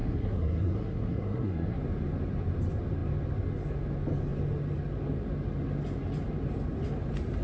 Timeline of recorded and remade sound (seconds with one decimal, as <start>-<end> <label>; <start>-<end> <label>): 0.0-1.8 remade; 1.8-7.4 recorded